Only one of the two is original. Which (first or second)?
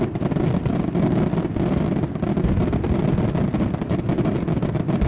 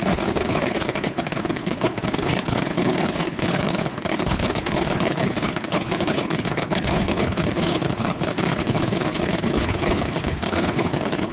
first